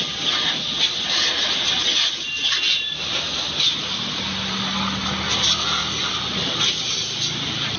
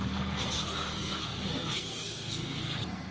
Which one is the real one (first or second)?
first